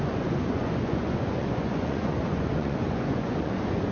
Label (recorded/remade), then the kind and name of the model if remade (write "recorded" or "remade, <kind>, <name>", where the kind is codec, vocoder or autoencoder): remade, vocoder, Vocos